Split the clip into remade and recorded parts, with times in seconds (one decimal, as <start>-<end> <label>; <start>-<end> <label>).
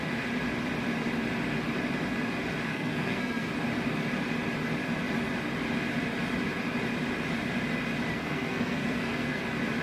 0.0-2.7 recorded; 2.7-3.5 remade; 3.5-8.1 recorded; 8.1-9.4 remade; 9.4-9.8 recorded